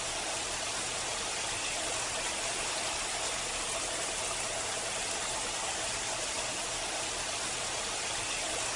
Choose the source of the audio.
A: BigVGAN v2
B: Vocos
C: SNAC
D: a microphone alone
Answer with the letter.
D